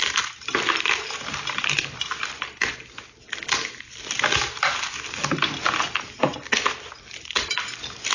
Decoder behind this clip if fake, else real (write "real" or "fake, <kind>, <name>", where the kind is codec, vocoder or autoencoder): real